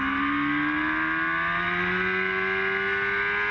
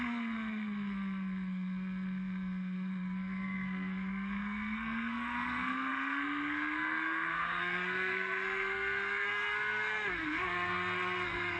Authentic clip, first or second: first